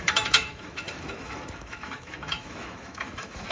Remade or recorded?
remade